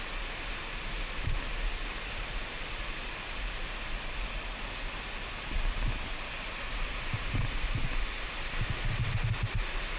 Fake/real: real